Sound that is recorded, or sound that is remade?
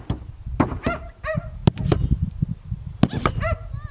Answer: recorded